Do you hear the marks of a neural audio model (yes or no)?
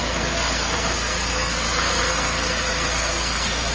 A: yes